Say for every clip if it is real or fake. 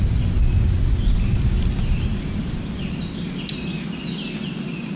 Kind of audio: real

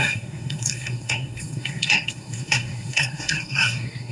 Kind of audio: fake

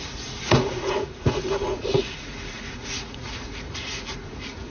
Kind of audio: fake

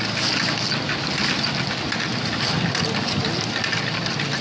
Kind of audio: real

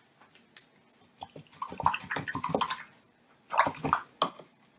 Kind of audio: real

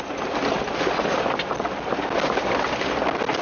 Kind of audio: real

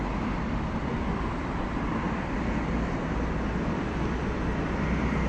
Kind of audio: real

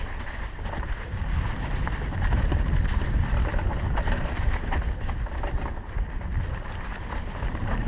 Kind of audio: fake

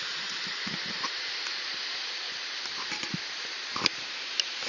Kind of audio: fake